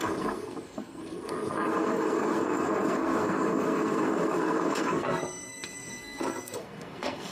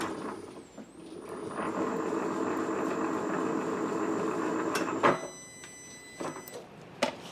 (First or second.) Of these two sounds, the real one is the second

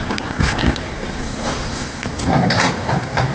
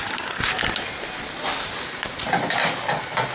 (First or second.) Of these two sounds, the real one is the second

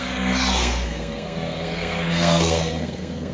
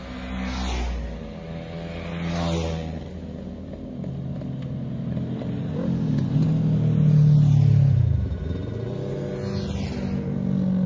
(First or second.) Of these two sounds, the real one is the second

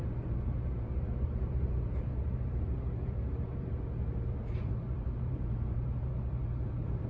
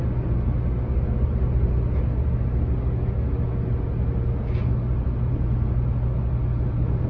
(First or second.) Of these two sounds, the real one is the second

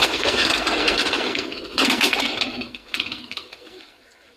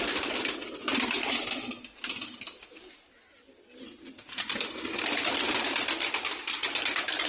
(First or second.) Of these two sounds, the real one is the second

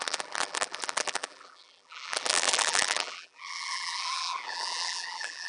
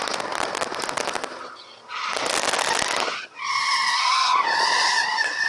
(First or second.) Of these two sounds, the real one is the second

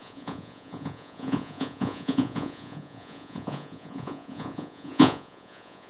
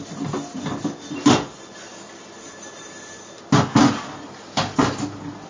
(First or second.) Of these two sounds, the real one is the second